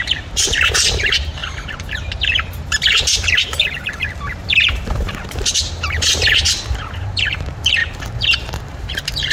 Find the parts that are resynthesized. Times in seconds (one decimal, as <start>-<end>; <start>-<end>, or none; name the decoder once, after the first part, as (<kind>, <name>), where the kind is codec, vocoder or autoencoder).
0.0-9.3 (vocoder, BigVGAN v2)